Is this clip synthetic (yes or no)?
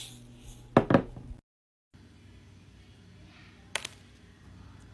no